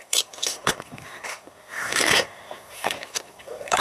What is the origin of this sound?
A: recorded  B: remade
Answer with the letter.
B